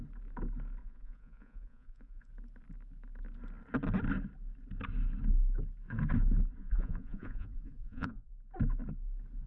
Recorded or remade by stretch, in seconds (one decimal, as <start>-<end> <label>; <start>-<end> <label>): 0.0-0.8 recorded; 0.8-2.3 remade; 2.3-6.6 recorded; 6.6-8.3 remade; 8.3-9.5 recorded